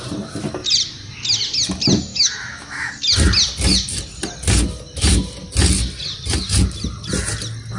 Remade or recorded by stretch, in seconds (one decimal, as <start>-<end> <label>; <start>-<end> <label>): 0.0-2.1 recorded; 2.1-2.9 remade; 2.9-7.8 recorded